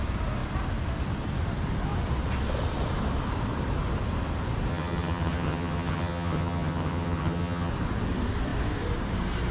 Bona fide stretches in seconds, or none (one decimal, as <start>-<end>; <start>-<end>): 0.0-4.7; 7.7-9.5